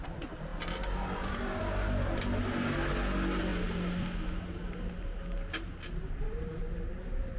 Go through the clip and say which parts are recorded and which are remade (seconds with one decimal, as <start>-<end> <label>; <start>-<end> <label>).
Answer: 0.0-7.4 recorded